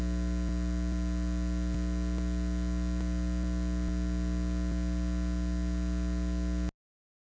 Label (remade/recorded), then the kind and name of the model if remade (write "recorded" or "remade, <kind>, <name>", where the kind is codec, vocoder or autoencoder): recorded